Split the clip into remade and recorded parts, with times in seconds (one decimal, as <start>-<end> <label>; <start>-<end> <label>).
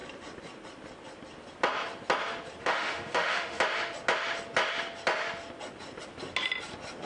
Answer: 0.0-2.6 recorded; 2.6-3.6 remade; 3.6-7.1 recorded